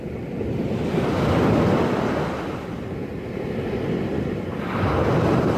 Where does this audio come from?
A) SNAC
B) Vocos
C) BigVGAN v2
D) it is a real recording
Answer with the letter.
D